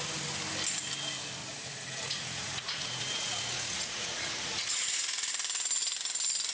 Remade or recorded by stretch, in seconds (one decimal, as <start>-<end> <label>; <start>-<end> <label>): 0.0-1.4 recorded; 1.4-5.3 remade; 5.3-6.5 recorded